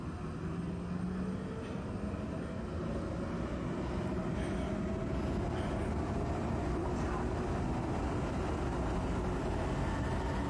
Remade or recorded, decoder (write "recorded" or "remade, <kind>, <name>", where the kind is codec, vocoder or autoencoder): recorded